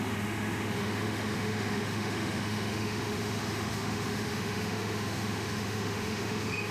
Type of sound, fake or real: fake